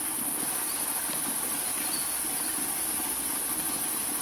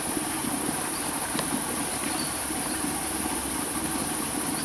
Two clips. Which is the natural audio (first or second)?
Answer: first